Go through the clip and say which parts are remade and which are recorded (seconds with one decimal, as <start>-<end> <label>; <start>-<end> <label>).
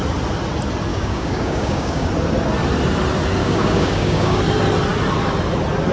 0.0-0.9 recorded; 0.9-2.1 remade; 2.1-3.4 recorded; 3.4-4.4 remade; 4.4-5.9 recorded